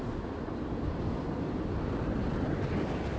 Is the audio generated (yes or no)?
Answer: no